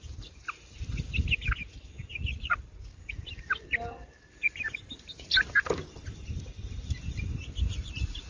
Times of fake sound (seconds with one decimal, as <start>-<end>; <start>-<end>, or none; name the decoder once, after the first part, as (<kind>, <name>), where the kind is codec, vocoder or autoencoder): 2.2-2.9 (vocoder, Vocos); 7.7-8.3